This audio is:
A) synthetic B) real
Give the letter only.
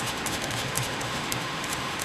A